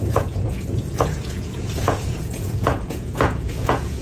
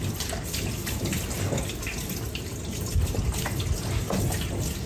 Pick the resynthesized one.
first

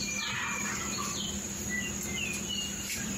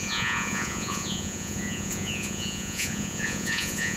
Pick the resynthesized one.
second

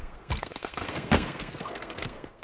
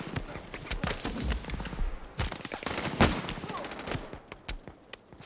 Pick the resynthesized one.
first